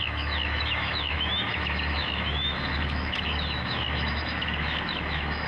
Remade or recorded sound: remade